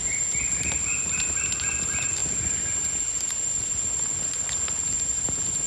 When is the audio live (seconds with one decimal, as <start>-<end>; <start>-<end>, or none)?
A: 0.0-5.7